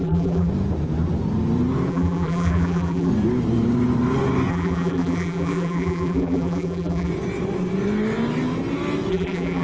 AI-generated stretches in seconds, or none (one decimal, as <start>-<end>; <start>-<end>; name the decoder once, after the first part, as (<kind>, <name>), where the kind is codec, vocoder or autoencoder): 0.0-0.5 (vocoder, BigVGAN v2); 1.9-3.1; 4.5-7.1; 9.1-9.6